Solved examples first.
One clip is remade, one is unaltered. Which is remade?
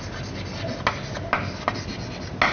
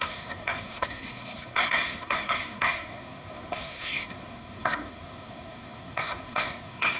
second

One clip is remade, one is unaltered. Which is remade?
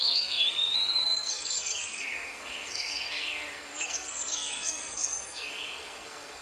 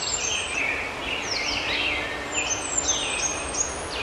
first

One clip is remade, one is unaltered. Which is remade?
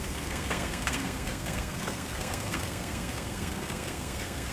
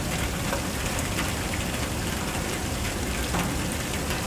first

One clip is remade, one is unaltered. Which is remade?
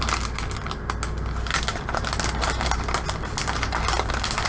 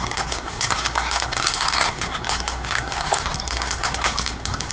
second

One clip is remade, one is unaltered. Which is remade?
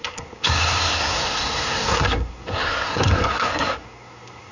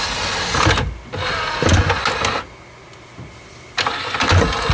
first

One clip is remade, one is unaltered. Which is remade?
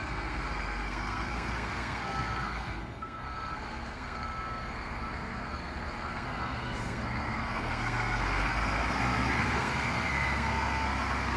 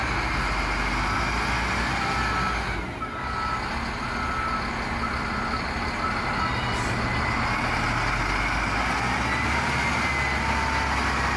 first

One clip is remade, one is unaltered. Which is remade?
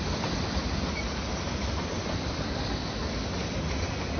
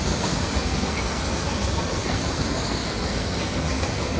second